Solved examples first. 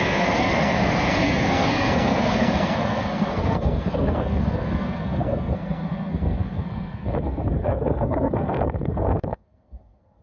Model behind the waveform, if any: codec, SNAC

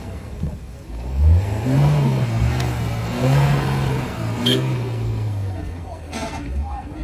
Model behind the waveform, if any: codec, SNAC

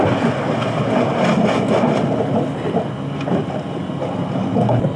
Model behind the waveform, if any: none